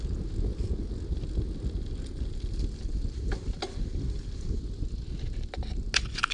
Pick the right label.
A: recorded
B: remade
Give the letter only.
A